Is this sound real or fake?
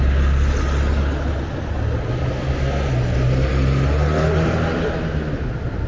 real